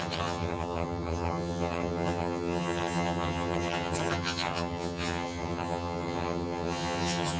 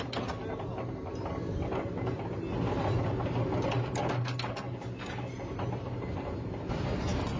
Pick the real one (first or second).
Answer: second